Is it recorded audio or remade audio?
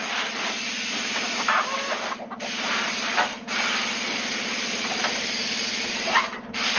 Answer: recorded